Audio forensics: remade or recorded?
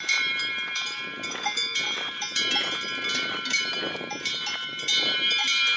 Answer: remade